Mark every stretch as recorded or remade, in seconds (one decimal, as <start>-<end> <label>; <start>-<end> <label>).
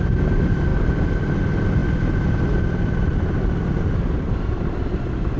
0.0-5.4 recorded